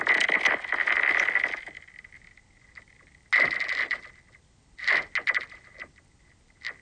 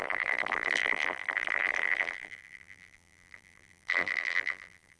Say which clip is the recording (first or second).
first